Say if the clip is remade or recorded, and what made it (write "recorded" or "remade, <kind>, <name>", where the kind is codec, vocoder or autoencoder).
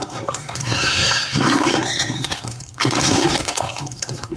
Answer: remade, codec, SNAC